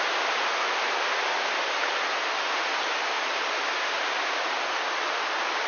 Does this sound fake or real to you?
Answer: real